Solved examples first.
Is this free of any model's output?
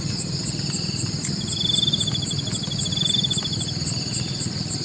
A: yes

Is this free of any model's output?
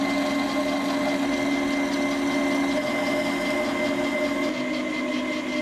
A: yes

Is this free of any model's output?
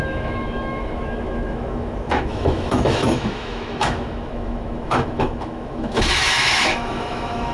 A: no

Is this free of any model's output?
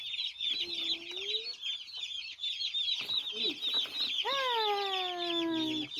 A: yes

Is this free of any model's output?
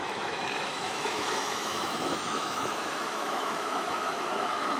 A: no